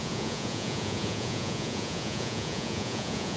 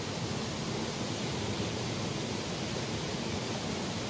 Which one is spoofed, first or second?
first